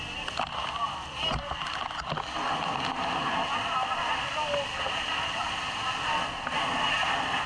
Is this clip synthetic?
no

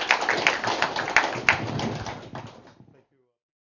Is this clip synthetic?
no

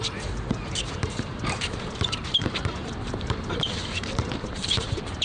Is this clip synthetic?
yes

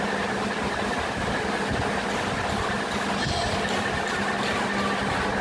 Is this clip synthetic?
no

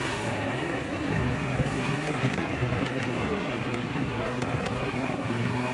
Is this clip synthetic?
yes